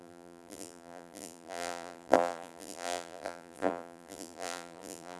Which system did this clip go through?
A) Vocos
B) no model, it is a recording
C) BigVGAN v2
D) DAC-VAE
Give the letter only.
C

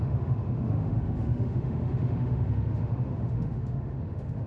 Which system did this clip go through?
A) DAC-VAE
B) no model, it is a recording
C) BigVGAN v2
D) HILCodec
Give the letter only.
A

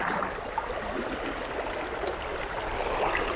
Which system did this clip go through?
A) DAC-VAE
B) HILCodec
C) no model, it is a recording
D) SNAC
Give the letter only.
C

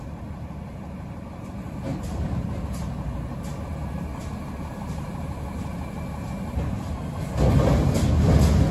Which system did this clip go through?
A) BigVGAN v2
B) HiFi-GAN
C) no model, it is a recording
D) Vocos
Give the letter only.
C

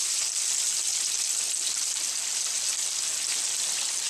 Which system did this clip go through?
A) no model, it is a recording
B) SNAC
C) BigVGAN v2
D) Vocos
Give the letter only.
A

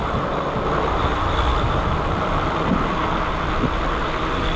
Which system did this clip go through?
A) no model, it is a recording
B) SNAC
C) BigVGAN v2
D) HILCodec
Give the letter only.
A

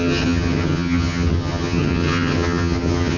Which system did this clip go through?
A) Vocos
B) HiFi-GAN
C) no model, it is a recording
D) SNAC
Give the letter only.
B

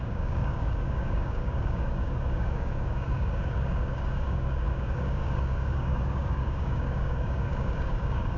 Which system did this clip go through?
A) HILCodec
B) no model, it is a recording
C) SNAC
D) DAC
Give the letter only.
D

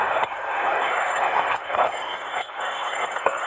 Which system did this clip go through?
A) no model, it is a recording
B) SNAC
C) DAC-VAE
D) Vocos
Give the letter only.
B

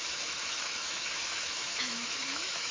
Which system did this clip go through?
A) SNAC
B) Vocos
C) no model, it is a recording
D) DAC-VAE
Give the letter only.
D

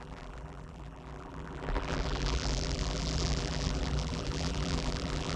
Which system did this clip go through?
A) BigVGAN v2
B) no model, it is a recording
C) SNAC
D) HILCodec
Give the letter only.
A